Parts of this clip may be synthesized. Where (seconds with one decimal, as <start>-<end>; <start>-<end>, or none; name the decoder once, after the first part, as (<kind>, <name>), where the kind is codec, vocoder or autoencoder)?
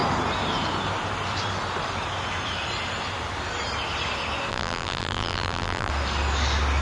4.5-5.9 (vocoder, BigVGAN v2)